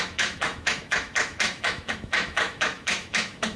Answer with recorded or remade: remade